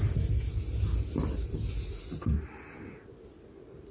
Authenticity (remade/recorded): recorded